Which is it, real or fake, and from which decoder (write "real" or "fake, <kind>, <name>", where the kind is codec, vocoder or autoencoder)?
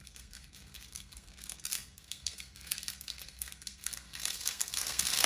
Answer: fake, codec, SNAC